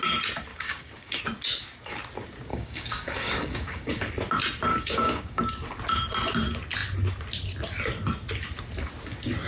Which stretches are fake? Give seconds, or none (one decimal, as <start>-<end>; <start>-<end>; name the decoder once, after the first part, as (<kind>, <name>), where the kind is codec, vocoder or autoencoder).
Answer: 0.5-1.2 (codec, DAC); 2.5-4.1; 4.7-5.4